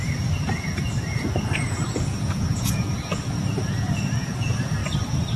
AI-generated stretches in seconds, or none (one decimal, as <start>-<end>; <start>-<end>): 0.0-4.8